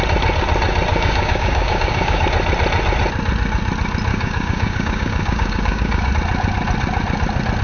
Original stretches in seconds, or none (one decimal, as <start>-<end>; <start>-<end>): 0.0-0.9; 2.2-4.1; 6.1-7.6